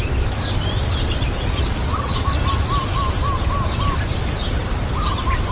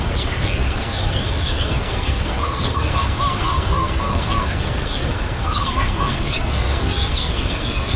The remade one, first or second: second